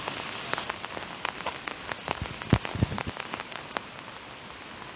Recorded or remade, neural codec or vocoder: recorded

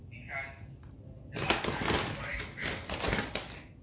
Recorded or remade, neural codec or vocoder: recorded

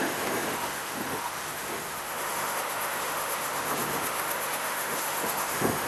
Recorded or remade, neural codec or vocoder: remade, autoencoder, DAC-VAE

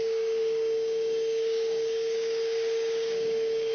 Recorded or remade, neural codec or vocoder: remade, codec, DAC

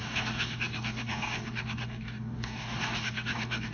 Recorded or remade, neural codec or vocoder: remade, codec, DAC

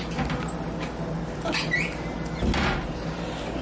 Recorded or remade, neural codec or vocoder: recorded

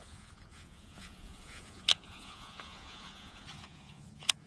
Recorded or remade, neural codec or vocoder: remade, vocoder, Vocos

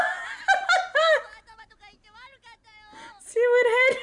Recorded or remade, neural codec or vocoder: recorded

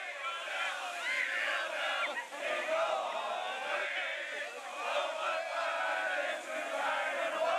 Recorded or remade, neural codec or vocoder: recorded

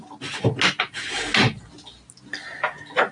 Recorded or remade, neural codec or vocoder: recorded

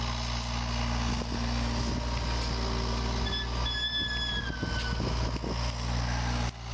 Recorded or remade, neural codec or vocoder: recorded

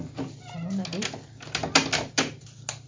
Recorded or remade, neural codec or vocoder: recorded